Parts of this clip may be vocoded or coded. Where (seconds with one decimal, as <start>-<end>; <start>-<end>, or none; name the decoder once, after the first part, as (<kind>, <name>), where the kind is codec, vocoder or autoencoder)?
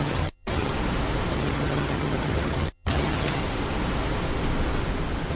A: 0.0-0.7 (vocoder, HiFi-GAN); 1.3-3.4